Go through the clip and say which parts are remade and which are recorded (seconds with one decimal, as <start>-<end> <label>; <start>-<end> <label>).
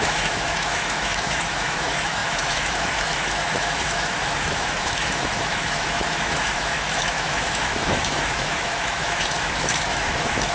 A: 0.0-10.5 remade